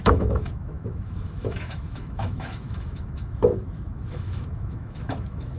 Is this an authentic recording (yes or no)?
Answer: no